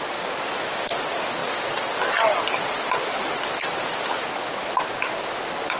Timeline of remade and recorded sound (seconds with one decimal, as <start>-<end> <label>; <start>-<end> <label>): 0.0-5.8 recorded

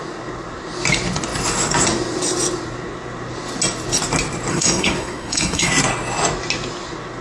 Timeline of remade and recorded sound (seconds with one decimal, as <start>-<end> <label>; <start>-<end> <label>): 0.0-4.5 recorded; 4.5-5.7 remade; 5.7-7.2 recorded

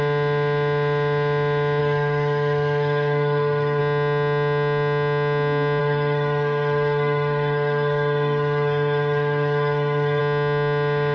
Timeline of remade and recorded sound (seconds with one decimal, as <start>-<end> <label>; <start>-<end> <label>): 0.0-1.8 recorded; 1.8-3.8 remade; 3.8-5.8 recorded; 5.8-10.2 remade; 10.2-11.1 recorded

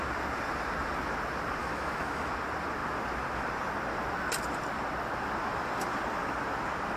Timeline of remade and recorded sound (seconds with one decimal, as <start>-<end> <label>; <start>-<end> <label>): 0.0-1.6 recorded; 1.6-2.3 remade; 2.3-7.0 recorded

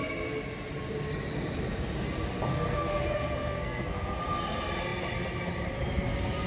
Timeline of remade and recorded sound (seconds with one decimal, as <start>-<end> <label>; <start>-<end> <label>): 0.0-2.5 recorded; 2.5-4.2 remade; 4.2-6.5 recorded